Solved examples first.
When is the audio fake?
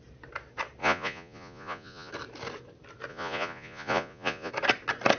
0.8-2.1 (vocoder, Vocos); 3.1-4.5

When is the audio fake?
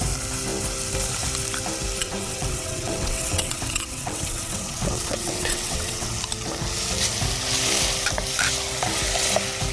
2.0-6.1 (vocoder, WaveNeXt)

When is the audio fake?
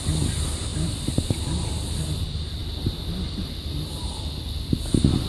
none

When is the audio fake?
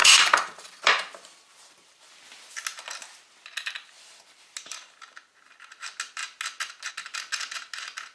0.0-2.0 (vocoder, BigVGAN v2)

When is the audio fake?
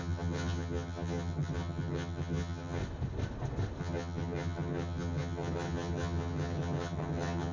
0.0-2.8 (vocoder, HiFi-GAN); 3.8-7.5